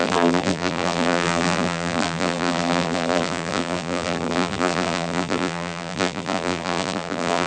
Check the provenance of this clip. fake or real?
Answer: fake